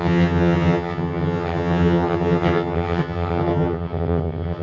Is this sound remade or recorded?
remade